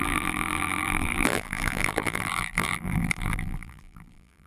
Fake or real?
fake